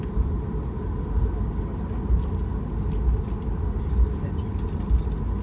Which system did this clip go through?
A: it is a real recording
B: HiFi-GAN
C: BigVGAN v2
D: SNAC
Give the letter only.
A